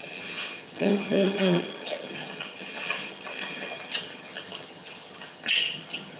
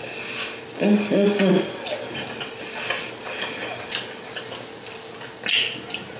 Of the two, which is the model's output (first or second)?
first